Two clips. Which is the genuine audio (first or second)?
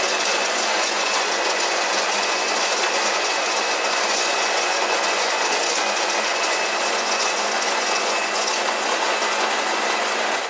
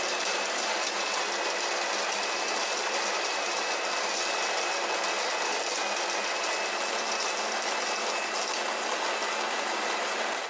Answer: second